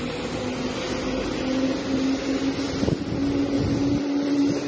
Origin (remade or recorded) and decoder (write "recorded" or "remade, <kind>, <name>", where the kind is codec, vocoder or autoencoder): recorded